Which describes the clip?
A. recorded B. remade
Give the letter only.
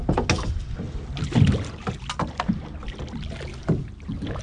A